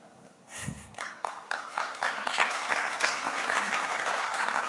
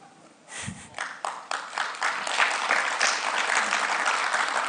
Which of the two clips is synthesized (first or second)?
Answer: first